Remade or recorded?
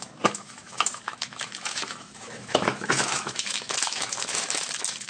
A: remade